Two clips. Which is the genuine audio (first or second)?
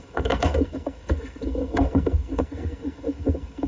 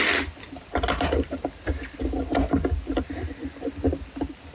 second